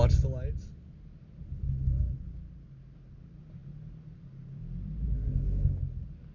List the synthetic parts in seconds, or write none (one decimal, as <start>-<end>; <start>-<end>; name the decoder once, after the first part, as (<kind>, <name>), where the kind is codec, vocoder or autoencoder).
none